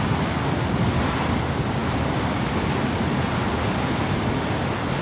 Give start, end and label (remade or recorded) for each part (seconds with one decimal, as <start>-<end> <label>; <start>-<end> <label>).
0.0-5.0 recorded